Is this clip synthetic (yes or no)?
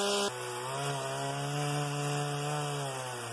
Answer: no